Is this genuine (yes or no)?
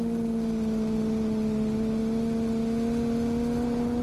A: yes